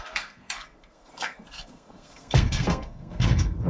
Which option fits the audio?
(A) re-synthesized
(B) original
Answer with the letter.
A